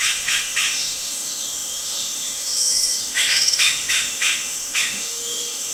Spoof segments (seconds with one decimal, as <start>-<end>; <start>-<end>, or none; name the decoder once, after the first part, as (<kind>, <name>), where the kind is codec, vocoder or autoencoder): 0.0-5.7 (autoencoder, DAC-VAE)